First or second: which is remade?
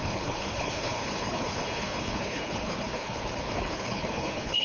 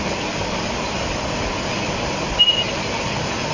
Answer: first